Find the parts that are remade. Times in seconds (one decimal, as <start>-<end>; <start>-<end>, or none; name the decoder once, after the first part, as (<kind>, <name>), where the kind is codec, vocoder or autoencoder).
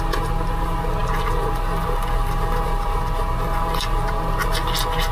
none